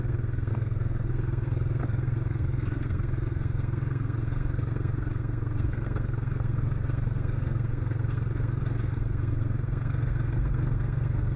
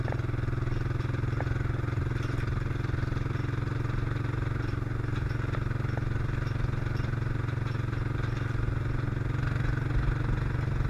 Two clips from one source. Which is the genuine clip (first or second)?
second